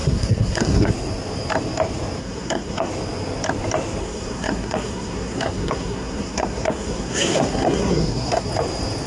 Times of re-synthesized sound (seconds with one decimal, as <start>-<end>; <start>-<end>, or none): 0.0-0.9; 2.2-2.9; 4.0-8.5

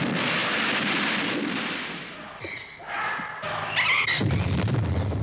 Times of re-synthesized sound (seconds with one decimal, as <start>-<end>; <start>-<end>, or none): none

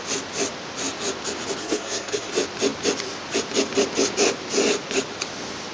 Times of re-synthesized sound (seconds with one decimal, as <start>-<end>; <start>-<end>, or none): 1.6-2.3

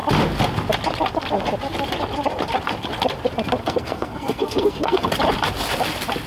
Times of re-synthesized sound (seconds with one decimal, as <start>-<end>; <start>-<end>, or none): 3.6-5.1

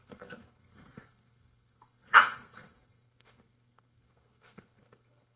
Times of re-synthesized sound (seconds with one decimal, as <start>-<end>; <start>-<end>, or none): 0.0-5.4